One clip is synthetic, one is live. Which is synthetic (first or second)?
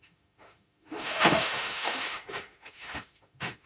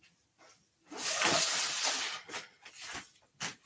first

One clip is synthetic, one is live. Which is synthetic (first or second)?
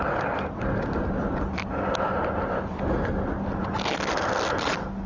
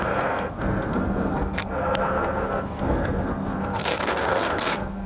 second